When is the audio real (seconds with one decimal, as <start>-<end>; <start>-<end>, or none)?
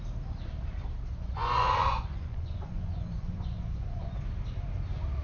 0.0-1.1; 4.2-5.2